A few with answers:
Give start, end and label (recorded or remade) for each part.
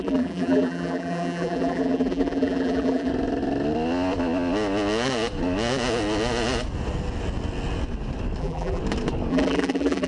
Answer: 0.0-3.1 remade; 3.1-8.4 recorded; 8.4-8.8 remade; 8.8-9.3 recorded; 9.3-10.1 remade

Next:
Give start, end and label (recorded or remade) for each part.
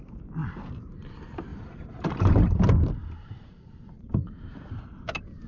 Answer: 0.0-1.5 recorded; 1.5-2.6 remade; 2.6-3.0 recorded; 3.0-4.7 remade; 4.7-5.5 recorded